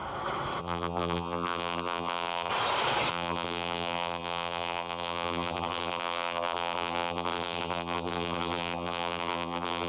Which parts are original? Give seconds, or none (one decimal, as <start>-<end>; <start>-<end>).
0.0-0.6; 2.5-3.1